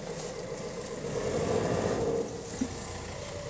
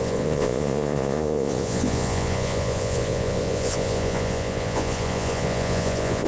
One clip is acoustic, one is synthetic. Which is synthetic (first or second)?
second